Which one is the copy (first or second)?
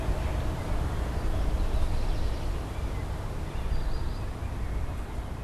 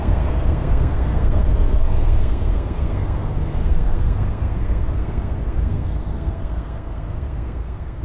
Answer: second